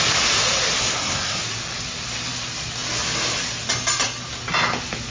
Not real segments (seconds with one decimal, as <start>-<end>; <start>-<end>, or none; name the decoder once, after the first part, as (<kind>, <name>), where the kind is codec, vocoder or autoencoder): 0.8-1.4 (codec, SNAC)